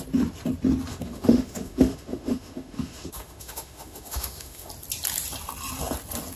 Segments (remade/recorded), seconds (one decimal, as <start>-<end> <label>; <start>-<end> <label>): 0.0-0.9 recorded; 0.9-4.7 remade; 4.7-6.4 recorded